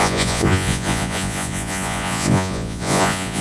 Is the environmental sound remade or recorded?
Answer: remade